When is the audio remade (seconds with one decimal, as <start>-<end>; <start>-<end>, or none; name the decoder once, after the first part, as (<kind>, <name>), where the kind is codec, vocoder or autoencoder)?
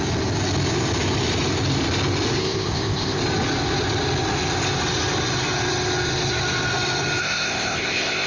2.4-3.2 (codec, ZipCodec); 7.2-8.3